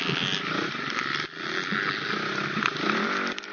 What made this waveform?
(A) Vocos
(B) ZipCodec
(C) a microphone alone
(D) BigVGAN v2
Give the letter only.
C